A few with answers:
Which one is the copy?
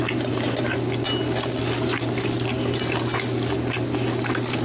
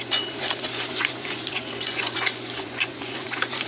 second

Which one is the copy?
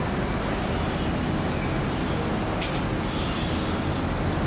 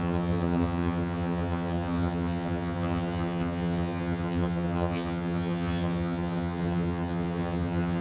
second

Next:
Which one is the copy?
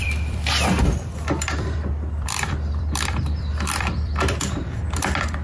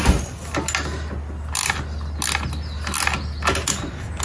first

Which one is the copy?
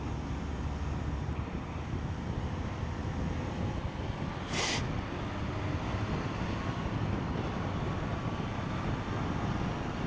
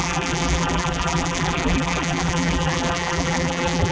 second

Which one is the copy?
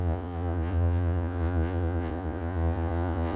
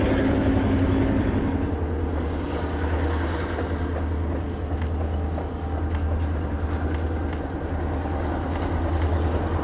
first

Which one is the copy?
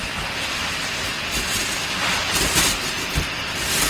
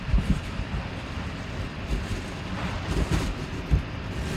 second